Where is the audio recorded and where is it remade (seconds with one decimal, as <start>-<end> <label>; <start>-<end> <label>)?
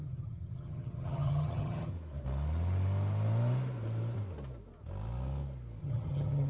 0.0-1.9 remade; 1.9-5.8 recorded; 5.8-6.5 remade